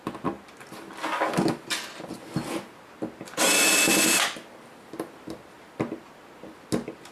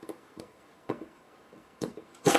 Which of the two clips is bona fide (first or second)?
first